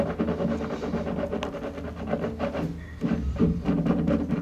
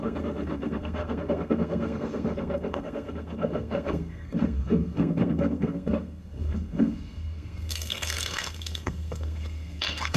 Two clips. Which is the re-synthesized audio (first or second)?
second